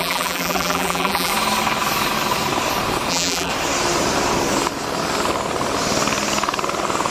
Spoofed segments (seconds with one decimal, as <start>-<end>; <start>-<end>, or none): 0.0-1.3; 3.1-3.5